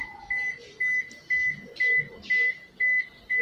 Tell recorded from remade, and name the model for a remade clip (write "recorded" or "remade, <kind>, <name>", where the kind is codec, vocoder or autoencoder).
recorded